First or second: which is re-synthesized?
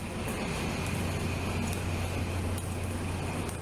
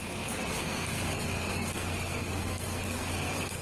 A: second